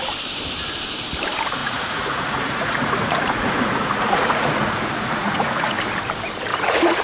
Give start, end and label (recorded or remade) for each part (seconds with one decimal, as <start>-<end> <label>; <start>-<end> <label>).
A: 0.0-1.6 recorded; 1.6-5.8 remade; 5.8-6.5 recorded; 6.5-7.0 remade